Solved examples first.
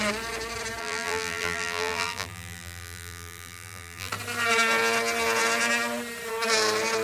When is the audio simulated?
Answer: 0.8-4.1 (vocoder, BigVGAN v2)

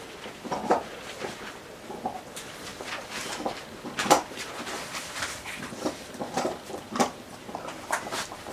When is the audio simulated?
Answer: 0.0-2.7 (vocoder, BigVGAN v2); 3.7-8.5

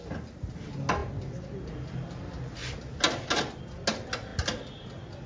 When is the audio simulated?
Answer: none

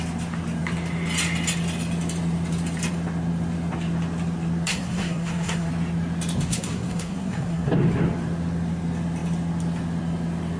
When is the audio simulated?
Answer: 4.7-5.7 (codec, SNAC); 6.5-7.7

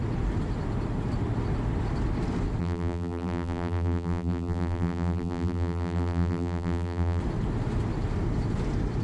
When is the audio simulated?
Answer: 2.6-7.2 (vocoder, BigVGAN v2)